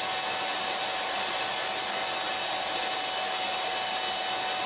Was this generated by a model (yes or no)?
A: no